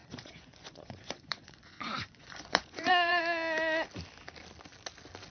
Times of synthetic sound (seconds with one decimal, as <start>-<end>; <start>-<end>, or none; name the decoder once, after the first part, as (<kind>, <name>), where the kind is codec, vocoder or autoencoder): 0.0-3.2 (vocoder, Vocos)